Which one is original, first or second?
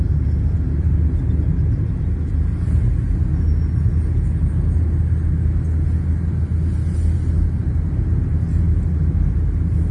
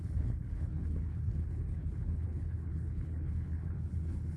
first